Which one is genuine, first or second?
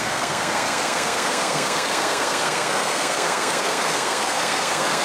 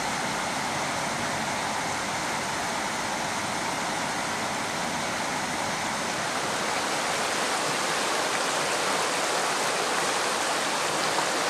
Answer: second